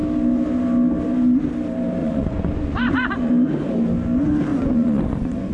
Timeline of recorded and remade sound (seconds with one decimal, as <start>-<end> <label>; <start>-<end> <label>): 0.0-2.0 recorded; 2.0-3.3 remade; 3.3-4.5 recorded; 4.5-5.5 remade